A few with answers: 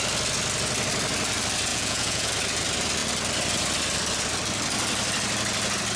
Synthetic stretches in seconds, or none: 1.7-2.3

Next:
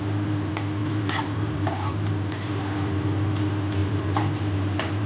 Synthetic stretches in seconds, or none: 0.8-2.1; 3.8-5.1

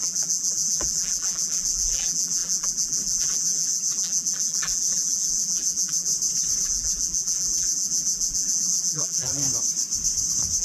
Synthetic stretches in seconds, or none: 0.0-6.1; 6.6-9.4

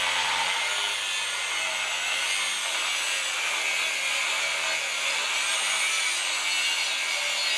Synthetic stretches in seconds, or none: none

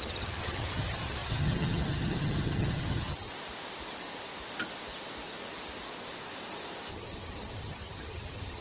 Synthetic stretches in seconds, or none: 0.0-3.3; 6.9-8.6

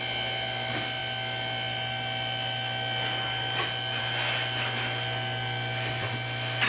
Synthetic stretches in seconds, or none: none

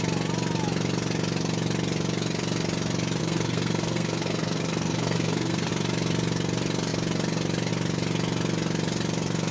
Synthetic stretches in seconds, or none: 3.2-5.7